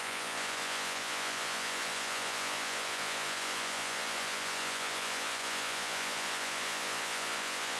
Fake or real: fake